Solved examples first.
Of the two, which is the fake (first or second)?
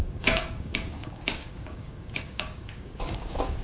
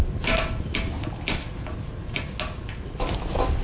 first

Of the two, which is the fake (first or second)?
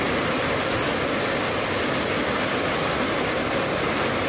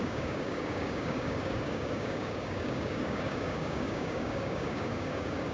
second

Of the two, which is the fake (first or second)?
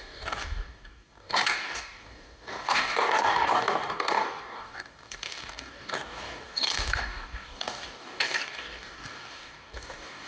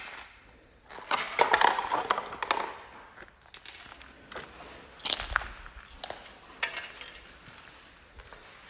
first